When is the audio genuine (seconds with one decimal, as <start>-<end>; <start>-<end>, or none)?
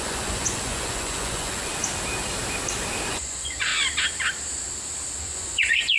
1.7-3.1; 3.7-5.2